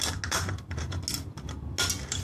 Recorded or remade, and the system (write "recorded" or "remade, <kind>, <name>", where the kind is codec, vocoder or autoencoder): recorded